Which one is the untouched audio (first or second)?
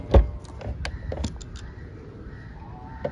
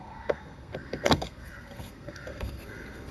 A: first